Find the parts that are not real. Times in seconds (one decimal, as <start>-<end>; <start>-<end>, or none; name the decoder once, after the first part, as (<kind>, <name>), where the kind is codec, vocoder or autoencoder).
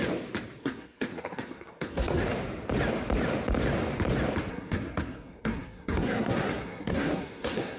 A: 0.6-2.2 (codec, SNAC); 4.5-7.8